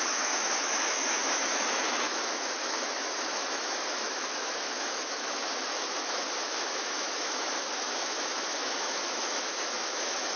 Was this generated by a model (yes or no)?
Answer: yes